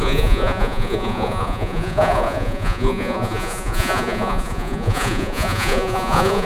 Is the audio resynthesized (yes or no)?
yes